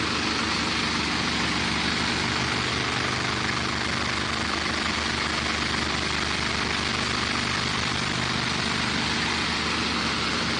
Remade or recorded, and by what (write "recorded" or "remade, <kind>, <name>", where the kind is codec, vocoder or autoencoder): recorded